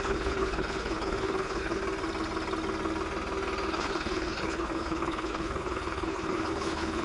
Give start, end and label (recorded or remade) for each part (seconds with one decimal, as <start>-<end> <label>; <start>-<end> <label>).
0.0-1.8 remade; 1.8-3.7 recorded; 3.7-7.0 remade